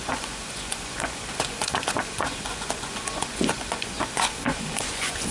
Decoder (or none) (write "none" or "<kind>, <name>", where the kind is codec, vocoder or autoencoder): vocoder, Vocos